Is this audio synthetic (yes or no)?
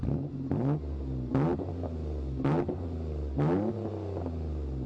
no